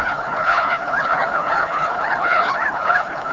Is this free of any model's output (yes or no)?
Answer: no